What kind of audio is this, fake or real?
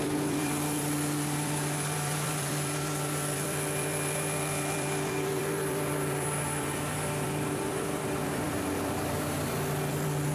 fake